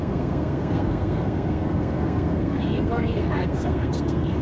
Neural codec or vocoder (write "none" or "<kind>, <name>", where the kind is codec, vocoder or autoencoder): codec, SNAC